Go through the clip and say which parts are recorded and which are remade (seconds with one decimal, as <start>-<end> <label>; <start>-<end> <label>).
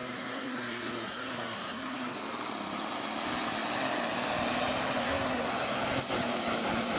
0.0-2.2 remade; 2.2-5.0 recorded; 5.0-5.5 remade; 5.5-7.0 recorded